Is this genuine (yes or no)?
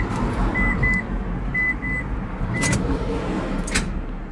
yes